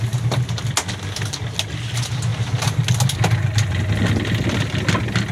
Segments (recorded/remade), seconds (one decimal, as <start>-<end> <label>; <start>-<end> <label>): 0.0-5.3 recorded